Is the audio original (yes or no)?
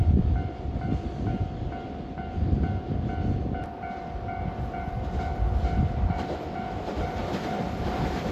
no